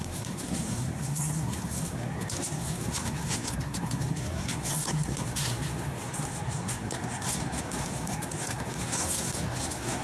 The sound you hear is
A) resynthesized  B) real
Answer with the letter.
A